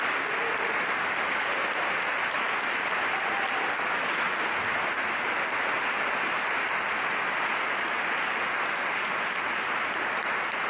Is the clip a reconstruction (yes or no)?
no